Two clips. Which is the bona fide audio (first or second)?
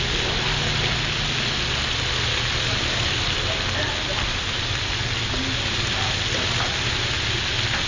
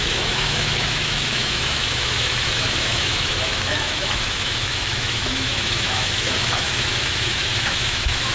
first